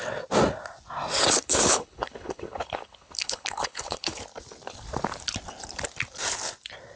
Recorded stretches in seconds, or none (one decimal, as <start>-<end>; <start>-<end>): 0.0-1.4; 4.2-7.0